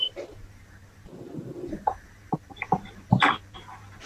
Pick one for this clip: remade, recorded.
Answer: remade